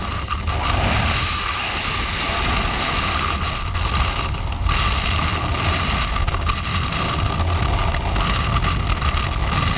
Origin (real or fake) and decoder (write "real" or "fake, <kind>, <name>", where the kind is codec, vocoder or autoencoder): real